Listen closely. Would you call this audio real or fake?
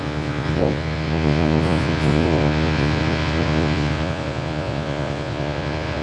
fake